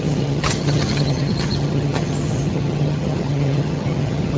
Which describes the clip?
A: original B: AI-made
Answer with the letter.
B